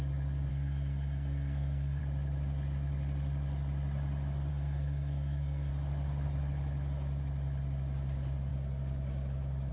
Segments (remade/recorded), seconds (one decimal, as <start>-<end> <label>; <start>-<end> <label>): 0.0-0.5 recorded; 0.5-2.0 remade; 2.0-4.5 recorded; 4.5-5.7 remade; 5.7-9.7 recorded